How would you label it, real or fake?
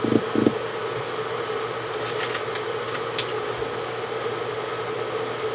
real